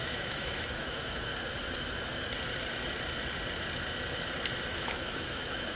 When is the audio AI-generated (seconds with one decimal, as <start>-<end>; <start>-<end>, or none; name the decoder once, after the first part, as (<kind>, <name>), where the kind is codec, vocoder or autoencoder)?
0.0-1.3 (autoencoder, DAC-VAE); 4.7-5.7